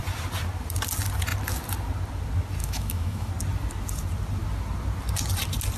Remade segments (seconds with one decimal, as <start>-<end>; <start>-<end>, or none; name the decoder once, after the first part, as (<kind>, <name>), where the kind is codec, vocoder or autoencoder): 2.6-3.3 (autoencoder, DAC-VAE)